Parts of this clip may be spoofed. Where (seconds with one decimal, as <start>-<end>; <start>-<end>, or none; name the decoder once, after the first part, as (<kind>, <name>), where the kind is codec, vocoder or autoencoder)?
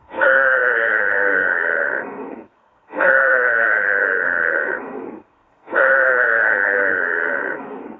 0.0-8.0 (codec, SNAC)